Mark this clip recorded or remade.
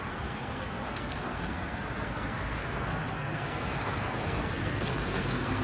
remade